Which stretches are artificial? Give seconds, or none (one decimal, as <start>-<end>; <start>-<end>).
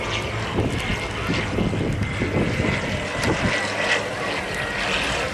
none